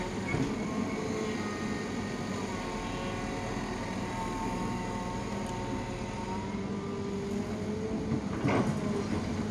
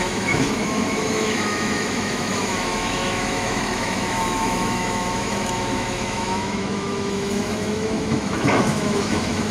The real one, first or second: first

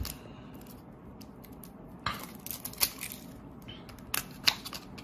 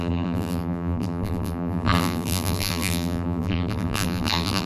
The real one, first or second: first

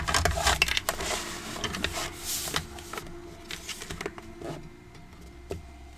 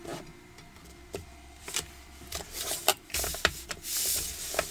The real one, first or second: first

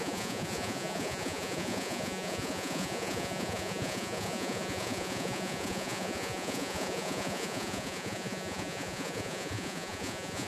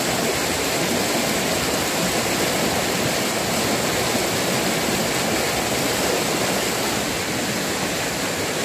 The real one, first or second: second